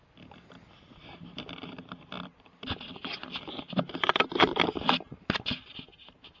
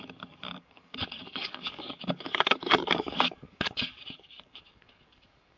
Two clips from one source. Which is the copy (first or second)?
second